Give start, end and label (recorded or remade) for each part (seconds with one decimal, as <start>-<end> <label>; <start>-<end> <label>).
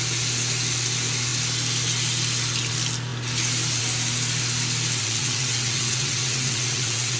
0.0-5.0 recorded; 5.0-7.2 remade